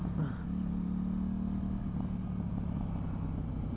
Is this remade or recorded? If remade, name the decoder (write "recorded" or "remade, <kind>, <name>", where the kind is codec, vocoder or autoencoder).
recorded